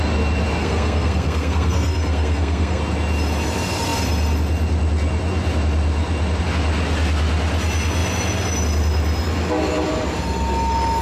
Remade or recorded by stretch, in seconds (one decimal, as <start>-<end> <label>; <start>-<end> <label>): 0.0-0.6 recorded; 0.6-2.8 remade; 2.8-11.0 recorded